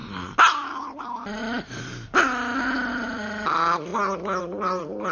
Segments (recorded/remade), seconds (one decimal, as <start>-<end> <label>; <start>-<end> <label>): 0.0-1.0 recorded; 1.0-1.4 remade; 1.4-2.9 recorded; 2.9-3.9 remade; 3.9-4.4 recorded; 4.4-5.1 remade